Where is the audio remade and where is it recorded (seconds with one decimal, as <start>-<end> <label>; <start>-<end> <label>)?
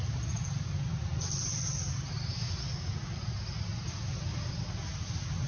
0.0-5.5 recorded